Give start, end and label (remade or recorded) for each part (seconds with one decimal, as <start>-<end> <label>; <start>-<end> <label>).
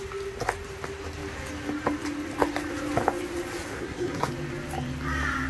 0.0-3.7 recorded; 3.7-4.3 remade; 4.3-5.5 recorded